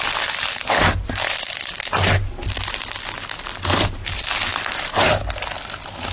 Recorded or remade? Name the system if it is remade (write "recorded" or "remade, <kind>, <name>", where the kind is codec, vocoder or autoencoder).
recorded